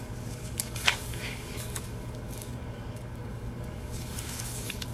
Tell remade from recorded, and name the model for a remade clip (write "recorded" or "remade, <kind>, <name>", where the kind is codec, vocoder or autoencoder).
remade, codec, DAC